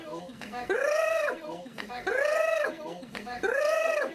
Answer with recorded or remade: remade